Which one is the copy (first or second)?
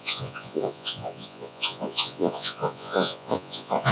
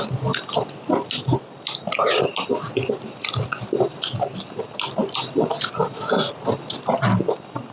first